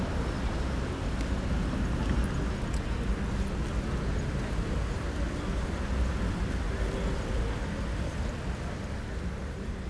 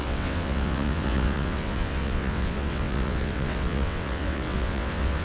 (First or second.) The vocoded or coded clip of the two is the second